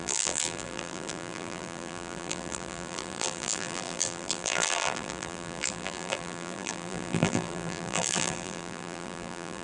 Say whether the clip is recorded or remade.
remade